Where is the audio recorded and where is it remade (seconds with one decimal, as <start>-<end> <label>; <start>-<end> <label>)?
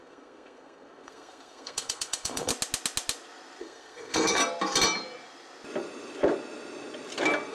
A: 0.0-2.5 remade; 2.5-3.6 recorded; 3.6-4.4 remade; 4.4-7.5 recorded